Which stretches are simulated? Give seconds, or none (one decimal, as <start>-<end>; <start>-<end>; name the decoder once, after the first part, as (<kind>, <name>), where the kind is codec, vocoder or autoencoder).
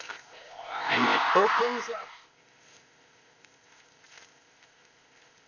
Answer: 0.0-5.5 (codec, ZipCodec)